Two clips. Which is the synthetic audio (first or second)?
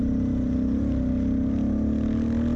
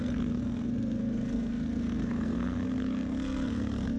second